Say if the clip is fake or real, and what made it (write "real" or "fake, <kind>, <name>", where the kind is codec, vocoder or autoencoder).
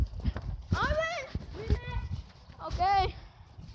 real